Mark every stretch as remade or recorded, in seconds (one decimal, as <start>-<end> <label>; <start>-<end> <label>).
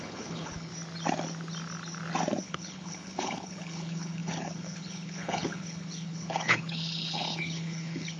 0.0-0.7 remade; 0.7-2.4 recorded; 2.4-8.2 remade